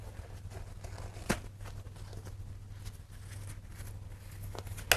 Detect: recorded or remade recorded